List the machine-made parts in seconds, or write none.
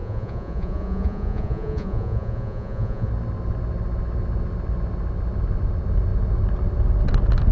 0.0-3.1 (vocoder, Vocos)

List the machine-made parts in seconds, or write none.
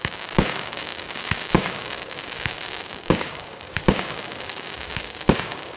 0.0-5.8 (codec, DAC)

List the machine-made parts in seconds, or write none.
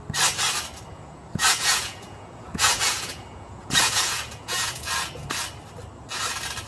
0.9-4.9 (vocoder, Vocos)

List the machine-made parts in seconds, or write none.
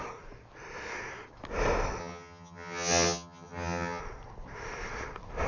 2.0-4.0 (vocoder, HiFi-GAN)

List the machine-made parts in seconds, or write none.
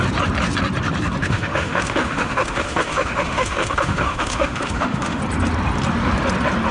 1.2-5.2 (autoencoder, DAC-VAE)